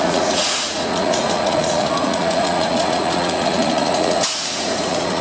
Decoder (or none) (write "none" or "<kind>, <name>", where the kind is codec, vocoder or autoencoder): vocoder, Vocos